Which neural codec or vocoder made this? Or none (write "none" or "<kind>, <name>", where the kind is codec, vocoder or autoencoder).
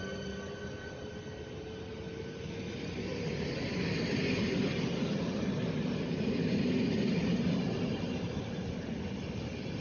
none